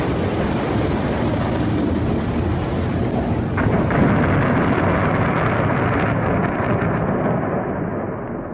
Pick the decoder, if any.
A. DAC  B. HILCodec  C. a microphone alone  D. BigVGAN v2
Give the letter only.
C